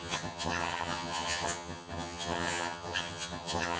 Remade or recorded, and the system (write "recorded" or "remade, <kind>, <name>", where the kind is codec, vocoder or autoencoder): remade, vocoder, HiFi-GAN